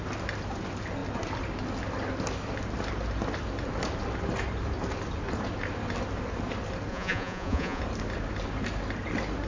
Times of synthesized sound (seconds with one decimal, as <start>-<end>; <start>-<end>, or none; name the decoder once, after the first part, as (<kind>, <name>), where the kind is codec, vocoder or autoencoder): 6.9-7.8 (vocoder, Vocos)